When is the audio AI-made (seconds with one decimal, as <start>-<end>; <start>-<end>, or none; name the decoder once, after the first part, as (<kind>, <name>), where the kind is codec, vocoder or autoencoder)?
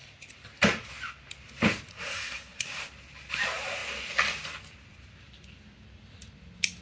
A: 1.9-2.8 (codec, SNAC)